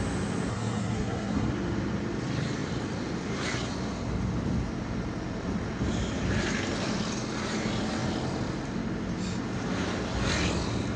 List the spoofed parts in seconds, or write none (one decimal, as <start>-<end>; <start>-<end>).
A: 0.5-1.5